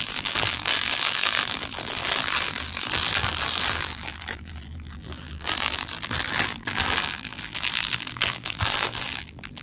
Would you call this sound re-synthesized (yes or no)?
yes